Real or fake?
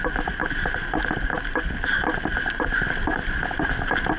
real